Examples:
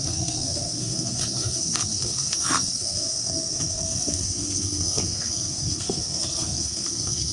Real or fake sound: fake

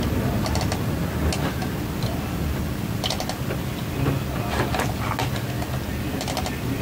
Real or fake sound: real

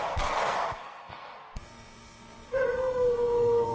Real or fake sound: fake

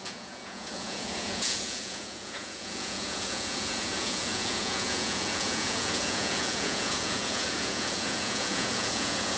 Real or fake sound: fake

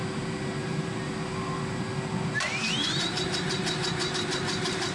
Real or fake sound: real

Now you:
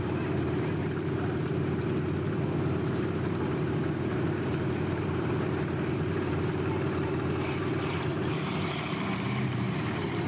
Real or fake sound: fake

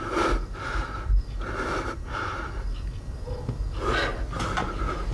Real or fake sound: real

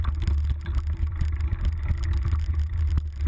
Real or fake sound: real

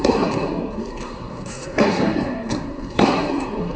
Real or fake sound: fake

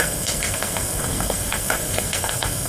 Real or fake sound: fake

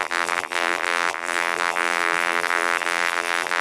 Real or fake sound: fake